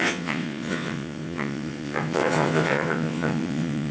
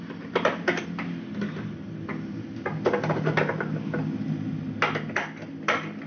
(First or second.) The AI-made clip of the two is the first